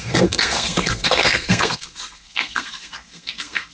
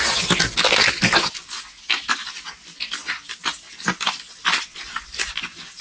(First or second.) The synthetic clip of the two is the first